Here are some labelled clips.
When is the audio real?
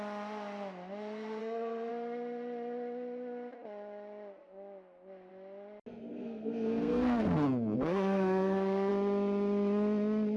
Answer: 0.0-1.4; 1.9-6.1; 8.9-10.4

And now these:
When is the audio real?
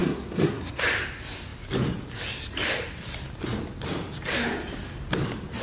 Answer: 0.8-5.6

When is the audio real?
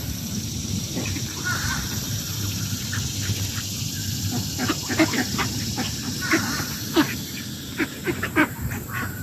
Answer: 4.0-5.1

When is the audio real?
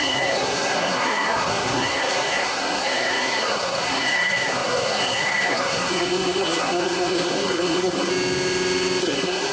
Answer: 8.1-9.0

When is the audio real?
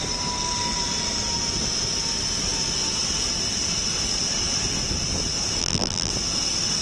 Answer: 0.0-5.6; 6.1-6.8